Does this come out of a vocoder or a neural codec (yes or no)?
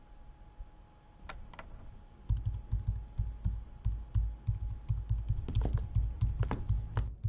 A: no